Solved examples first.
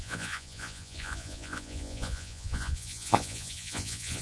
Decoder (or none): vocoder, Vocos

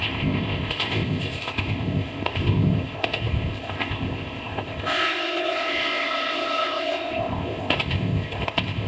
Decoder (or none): codec, ZipCodec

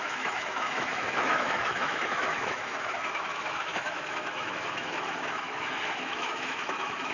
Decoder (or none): autoencoder, DAC-VAE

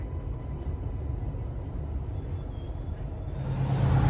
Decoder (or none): none